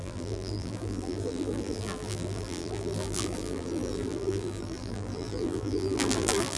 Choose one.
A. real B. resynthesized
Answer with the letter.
B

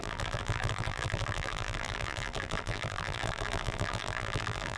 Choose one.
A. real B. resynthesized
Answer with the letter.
B